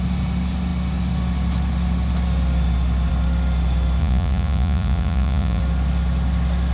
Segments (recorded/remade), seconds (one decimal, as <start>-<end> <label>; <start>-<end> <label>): 0.0-4.0 recorded; 4.0-5.6 remade; 5.6-6.7 recorded